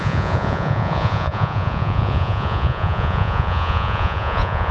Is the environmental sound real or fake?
fake